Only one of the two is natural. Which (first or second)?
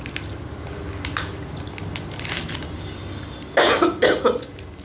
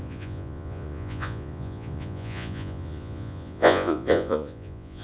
first